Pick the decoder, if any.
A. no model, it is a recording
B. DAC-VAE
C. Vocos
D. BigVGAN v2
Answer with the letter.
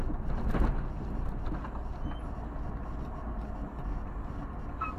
A